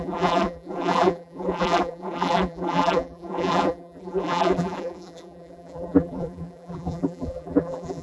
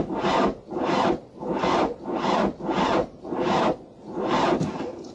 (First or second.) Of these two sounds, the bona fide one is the second